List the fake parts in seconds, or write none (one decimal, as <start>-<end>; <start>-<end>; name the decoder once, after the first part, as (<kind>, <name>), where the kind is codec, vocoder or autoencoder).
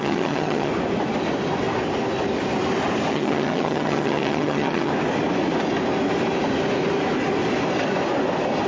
0.0-0.7 (vocoder, HiFi-GAN); 3.1-4.9